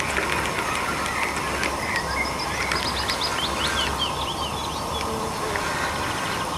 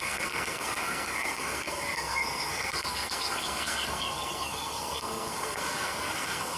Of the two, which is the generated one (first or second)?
second